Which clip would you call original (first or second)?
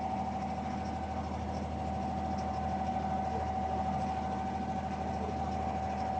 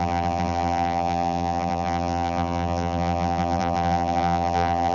first